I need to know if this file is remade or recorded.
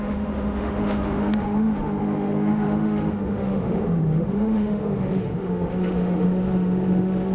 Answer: remade